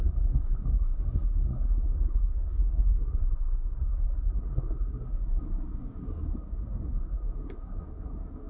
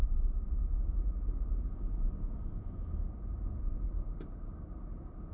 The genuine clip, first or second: second